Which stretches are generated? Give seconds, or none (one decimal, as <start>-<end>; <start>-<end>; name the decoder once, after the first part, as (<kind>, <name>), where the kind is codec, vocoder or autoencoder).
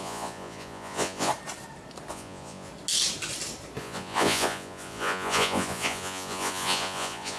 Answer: 0.0-1.3 (vocoder, Vocos); 2.1-2.7; 3.8-7.4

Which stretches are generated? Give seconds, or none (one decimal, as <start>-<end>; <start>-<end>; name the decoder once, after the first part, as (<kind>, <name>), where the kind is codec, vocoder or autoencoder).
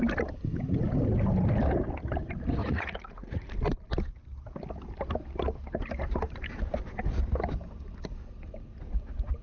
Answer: 2.6-3.5 (vocoder, Vocos)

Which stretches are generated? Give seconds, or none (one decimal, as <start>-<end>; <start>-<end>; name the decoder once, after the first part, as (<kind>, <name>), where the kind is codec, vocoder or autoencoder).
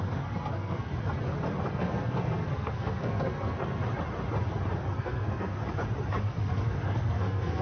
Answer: 0.0-0.9 (codec, SNAC); 1.7-3.8; 5.0-5.6; 6.2-7.6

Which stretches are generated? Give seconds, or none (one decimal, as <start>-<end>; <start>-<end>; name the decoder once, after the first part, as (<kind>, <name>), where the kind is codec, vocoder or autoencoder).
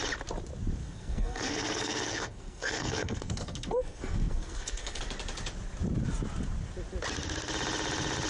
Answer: 0.8-5.0 (codec, SNAC)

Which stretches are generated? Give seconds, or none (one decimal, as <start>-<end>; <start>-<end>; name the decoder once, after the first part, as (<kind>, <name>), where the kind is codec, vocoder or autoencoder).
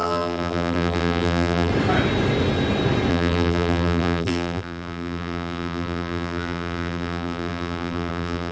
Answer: 0.0-1.7 (vocoder, BigVGAN v2); 3.1-8.5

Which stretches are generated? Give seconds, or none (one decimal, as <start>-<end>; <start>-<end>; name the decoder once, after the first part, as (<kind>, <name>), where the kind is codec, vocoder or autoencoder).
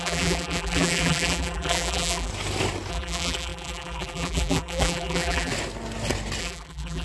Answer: 0.0-2.3 (vocoder, BigVGAN v2); 2.9-5.5; 6.4-7.0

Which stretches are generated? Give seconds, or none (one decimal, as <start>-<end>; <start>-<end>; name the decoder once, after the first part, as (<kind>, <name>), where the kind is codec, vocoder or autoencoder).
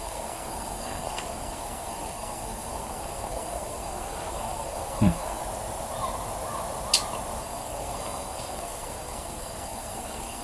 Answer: 0.0-5.4 (codec, SNAC); 7.4-10.4